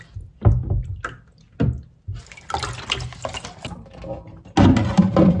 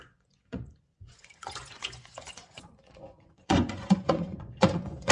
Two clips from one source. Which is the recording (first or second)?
first